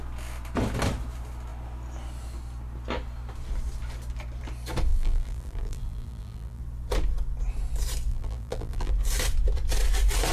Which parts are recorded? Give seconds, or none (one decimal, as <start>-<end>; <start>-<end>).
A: 0.0-4.9; 6.6-8.1; 8.9-10.3